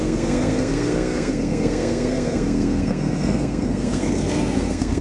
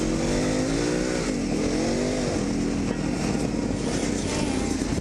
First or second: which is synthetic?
first